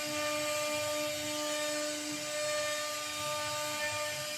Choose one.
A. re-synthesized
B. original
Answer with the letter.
B